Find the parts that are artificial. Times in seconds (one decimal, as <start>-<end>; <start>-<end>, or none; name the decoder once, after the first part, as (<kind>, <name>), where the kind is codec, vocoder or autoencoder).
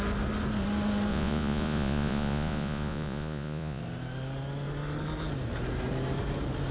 1.1-3.8 (vocoder, Vocos)